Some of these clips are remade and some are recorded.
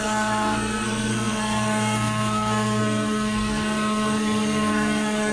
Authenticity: remade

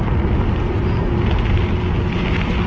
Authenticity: recorded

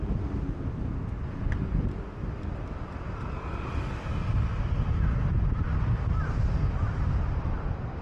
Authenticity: recorded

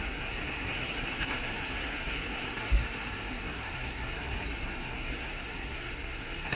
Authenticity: remade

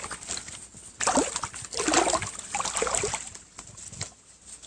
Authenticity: recorded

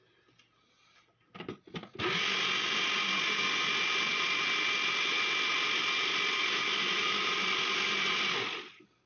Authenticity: recorded